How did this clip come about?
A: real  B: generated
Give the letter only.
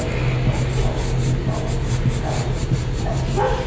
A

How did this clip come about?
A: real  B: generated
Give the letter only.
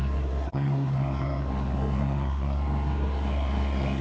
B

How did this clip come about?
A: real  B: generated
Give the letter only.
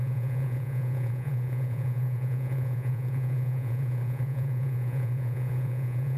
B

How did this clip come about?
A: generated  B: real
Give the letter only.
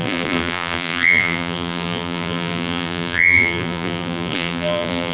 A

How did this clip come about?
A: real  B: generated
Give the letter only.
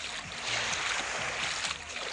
A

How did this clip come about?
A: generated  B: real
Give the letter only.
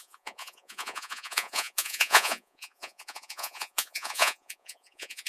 A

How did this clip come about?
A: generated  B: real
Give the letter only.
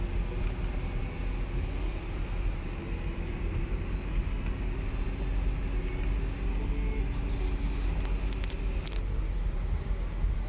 B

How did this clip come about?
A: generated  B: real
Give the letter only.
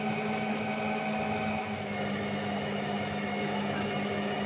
A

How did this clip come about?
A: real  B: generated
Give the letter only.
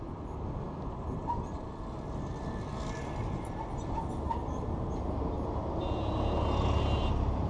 A